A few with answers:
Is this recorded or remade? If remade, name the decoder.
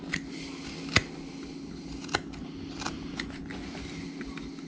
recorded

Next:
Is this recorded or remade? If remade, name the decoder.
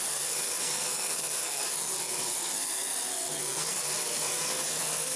remade, codec, SNAC